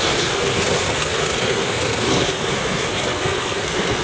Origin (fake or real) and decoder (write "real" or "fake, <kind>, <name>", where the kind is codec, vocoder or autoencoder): fake, codec, SNAC